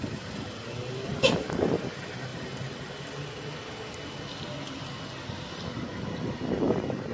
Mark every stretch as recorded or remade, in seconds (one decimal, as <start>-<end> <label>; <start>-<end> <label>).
0.0-7.1 recorded